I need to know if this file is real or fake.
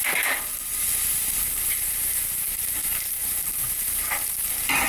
real